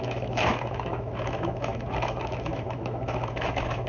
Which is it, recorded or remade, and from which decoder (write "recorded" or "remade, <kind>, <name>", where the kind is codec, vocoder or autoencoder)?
remade, autoencoder, DAC-VAE